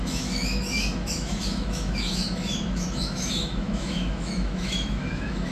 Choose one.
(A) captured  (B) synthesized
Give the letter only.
B